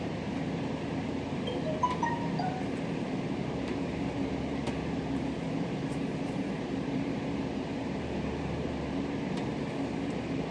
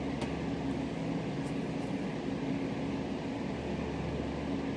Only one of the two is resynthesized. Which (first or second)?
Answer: first